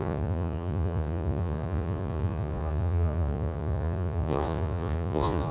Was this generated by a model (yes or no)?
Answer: yes